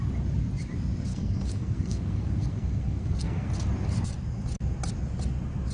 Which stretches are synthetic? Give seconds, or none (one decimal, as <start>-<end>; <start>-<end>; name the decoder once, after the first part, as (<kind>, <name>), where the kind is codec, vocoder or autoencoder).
1.1-3.5 (codec, SNAC)